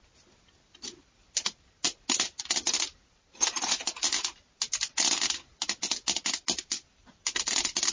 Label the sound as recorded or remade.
recorded